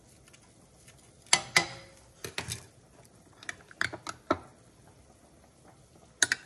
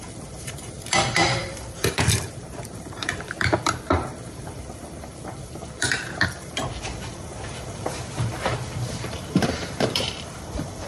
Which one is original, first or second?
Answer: first